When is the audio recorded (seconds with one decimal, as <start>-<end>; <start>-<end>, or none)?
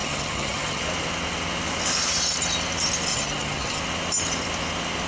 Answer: 0.8-3.1; 3.8-5.1